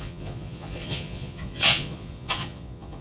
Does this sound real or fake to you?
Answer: fake